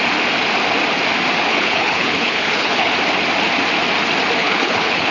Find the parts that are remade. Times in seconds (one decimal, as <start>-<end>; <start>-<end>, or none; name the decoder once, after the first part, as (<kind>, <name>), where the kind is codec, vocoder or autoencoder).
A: 1.5-2.9 (codec, HILCodec); 4.4-5.1